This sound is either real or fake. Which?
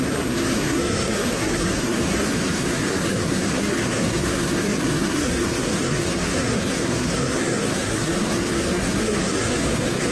fake